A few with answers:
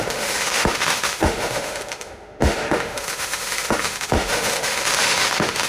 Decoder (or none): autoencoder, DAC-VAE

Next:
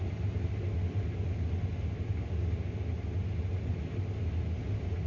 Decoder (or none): none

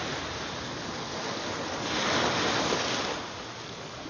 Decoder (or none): none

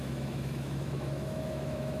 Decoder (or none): autoencoder, DAC-VAE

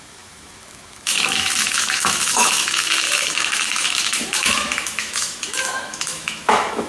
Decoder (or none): autoencoder, DAC-VAE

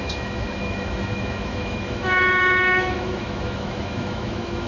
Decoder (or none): autoencoder, DAC-VAE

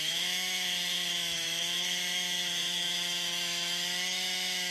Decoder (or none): autoencoder, DAC-VAE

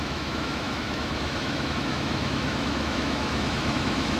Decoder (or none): autoencoder, DAC-VAE